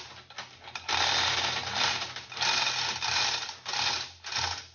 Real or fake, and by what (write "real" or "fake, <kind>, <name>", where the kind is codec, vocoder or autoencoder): real